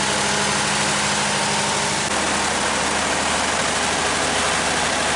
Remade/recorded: recorded